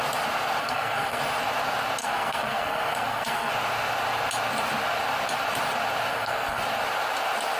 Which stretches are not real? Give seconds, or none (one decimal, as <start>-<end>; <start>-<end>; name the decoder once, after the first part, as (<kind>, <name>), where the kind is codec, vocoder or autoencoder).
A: 0.6-1.2 (codec, SNAC); 2.0-3.5; 6.1-6.6